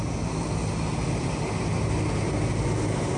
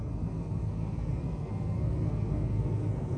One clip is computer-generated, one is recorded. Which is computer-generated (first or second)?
second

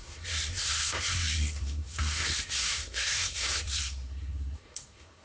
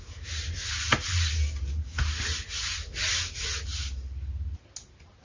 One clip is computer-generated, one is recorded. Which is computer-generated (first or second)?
first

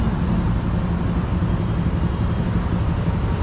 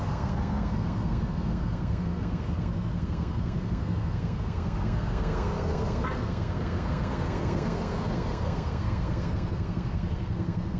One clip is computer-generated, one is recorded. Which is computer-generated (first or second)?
second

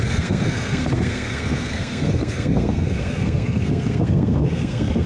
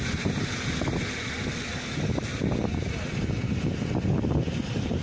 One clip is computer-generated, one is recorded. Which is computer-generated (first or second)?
first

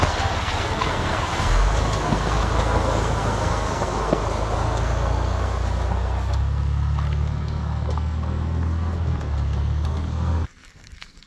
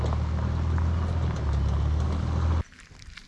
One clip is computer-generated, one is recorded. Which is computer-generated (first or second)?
first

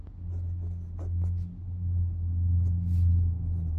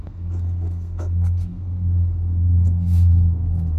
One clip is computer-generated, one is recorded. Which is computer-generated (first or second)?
second